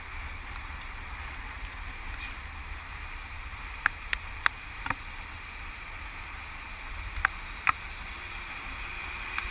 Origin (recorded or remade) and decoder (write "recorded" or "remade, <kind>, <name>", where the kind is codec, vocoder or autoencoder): remade, vocoder, BigVGAN v2